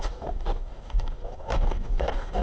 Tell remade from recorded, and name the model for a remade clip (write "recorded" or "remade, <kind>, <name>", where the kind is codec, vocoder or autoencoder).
remade, codec, DAC